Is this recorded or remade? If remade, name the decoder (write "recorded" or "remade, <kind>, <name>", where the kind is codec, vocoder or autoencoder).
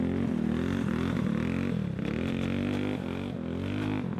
recorded